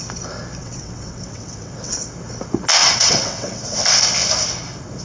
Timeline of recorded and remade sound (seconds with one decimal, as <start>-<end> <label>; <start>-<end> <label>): 0.0-0.6 recorded; 0.6-2.1 remade; 2.1-2.8 recorded; 2.8-3.6 remade; 3.6-5.0 recorded